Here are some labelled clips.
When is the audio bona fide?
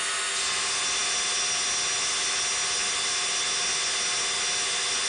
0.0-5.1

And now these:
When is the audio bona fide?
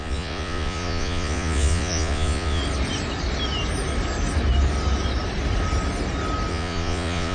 2.6-6.5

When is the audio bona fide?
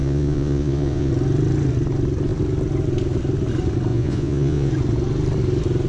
1.1-3.9; 4.7-5.9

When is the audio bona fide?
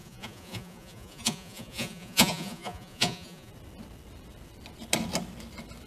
3.5-5.9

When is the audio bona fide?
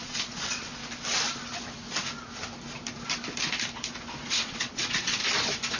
0.8-4.3; 5.2-5.8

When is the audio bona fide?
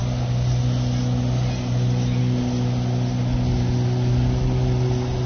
0.0-5.3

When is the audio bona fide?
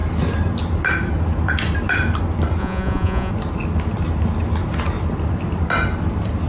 0.0-2.6; 3.3-6.5